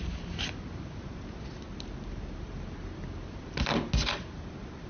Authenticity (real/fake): real